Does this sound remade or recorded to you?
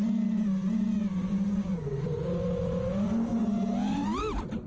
recorded